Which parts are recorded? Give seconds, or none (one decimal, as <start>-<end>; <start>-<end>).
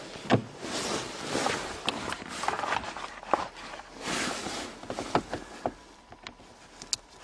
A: 0.0-7.2